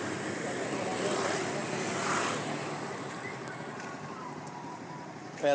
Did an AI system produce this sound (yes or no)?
no